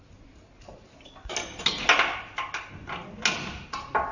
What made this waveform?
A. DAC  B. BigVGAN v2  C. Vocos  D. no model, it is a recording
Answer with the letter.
D